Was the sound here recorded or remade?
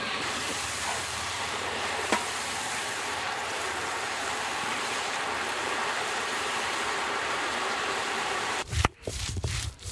remade